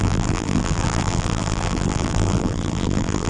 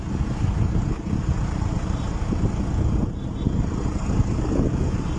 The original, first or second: second